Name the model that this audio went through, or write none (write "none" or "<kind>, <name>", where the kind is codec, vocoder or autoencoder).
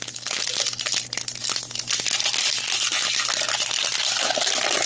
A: none